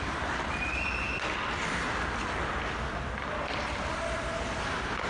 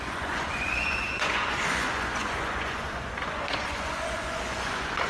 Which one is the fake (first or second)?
second